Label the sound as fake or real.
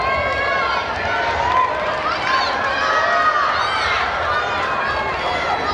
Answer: real